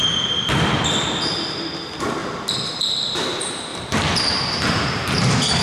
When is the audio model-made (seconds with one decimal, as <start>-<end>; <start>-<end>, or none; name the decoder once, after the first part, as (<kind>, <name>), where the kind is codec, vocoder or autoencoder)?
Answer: 2.2-2.7 (vocoder, BigVGAN v2); 3.7-5.6